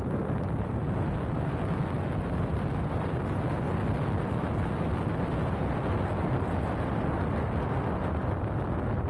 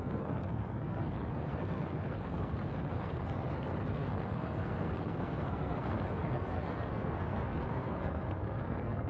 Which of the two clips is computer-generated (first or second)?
second